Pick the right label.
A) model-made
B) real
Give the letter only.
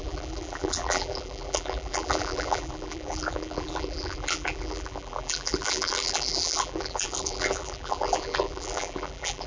A